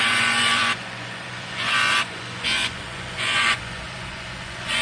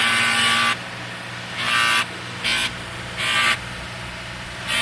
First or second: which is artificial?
first